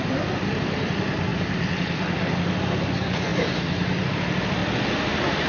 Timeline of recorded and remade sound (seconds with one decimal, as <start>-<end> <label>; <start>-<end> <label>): 0.0-5.5 recorded